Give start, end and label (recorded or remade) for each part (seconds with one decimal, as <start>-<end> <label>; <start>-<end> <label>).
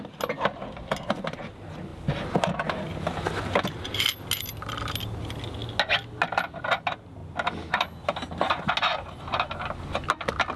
0.0-10.6 recorded